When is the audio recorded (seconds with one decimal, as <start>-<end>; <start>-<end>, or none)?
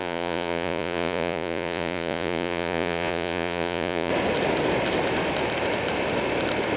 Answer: 4.1-6.8